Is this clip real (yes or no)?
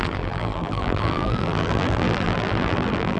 no